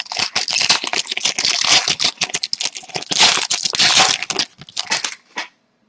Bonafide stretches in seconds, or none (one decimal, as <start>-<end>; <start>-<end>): 0.0-5.9